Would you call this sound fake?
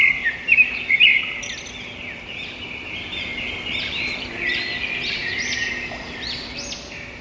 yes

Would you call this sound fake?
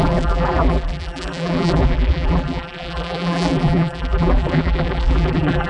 yes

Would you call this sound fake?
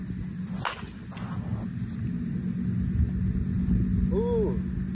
no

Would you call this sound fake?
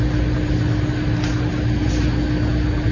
no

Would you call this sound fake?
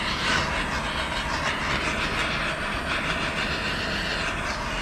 no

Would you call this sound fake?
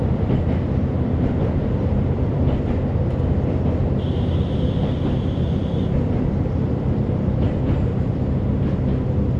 yes